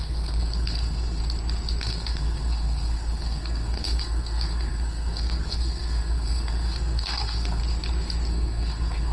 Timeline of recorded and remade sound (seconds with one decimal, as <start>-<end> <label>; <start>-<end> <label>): 0.0-1.2 remade; 1.2-1.8 recorded; 1.8-7.6 remade; 7.6-8.3 recorded; 8.3-9.1 remade